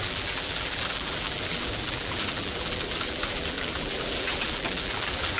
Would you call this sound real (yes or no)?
no